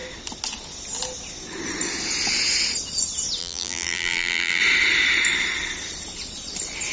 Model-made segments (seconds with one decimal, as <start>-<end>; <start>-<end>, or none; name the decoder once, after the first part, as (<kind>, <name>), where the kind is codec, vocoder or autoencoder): 3.4-4.6 (vocoder, BigVGAN v2)